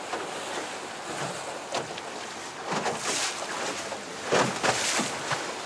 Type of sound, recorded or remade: recorded